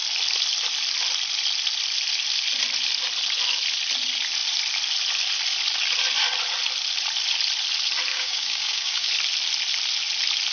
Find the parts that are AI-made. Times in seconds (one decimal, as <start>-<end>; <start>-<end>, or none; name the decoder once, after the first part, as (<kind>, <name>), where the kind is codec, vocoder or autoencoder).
8.1-9.1 (codec, DAC)